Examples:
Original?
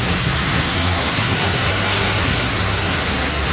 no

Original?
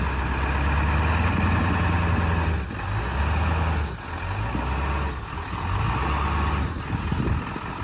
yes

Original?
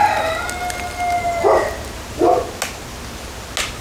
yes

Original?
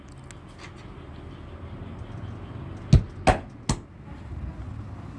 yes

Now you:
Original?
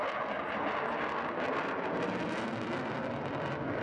no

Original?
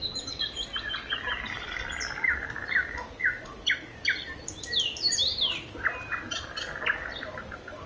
yes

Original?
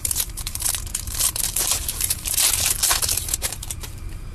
no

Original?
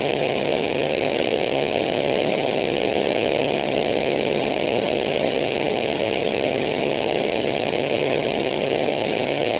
no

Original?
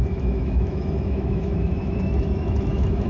no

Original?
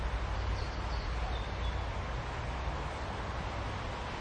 yes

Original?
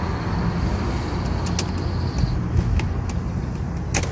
yes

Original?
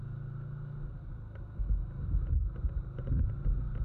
yes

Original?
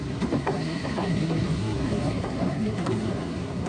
no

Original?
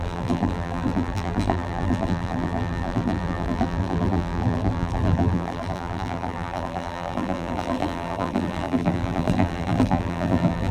no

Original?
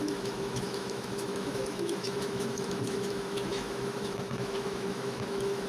no